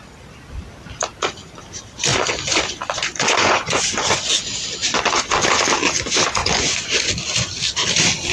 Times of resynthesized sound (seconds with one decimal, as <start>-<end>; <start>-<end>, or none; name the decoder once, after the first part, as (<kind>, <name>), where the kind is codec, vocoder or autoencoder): 2.1-4.3 (vocoder, Vocos); 6.4-7.1